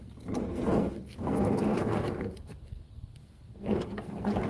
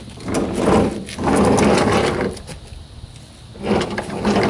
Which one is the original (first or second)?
second